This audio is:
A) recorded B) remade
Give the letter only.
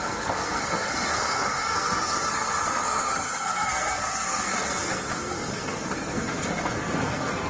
B